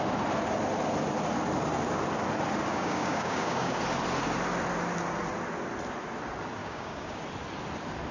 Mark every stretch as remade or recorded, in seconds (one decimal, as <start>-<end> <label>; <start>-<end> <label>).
0.0-2.7 recorded; 2.7-3.8 remade; 3.8-6.6 recorded; 6.6-7.2 remade; 7.2-8.1 recorded